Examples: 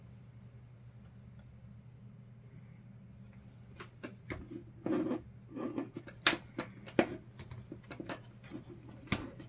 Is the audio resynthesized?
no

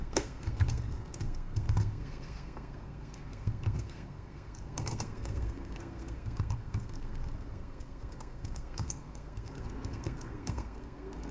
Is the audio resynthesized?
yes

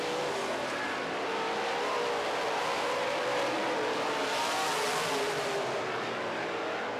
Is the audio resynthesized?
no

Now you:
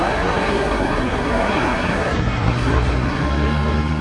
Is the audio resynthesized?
yes